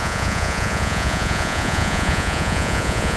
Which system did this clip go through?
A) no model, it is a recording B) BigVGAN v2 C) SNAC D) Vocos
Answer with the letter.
D